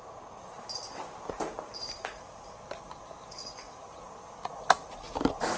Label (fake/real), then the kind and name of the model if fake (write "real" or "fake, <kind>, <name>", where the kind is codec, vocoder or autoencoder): real